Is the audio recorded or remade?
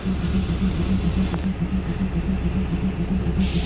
recorded